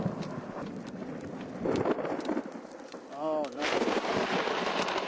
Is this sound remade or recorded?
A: remade